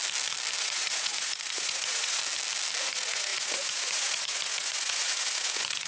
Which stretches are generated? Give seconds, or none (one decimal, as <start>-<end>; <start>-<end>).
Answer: 0.6-2.2; 2.8-5.9